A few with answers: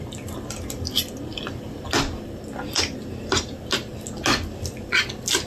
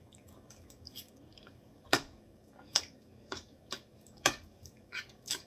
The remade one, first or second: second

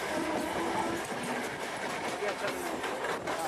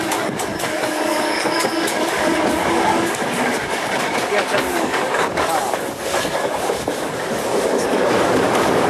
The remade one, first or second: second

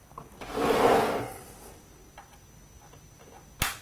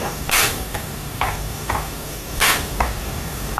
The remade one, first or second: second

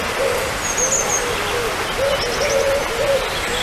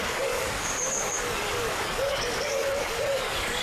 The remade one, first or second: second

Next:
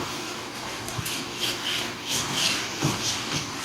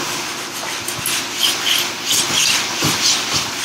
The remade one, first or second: first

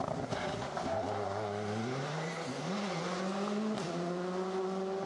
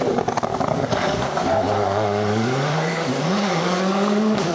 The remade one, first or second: second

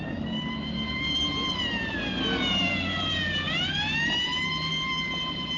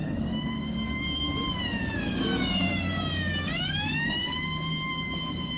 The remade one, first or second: second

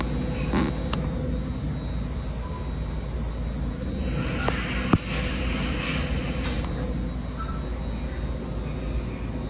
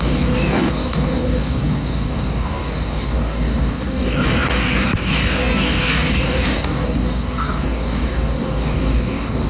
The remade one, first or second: second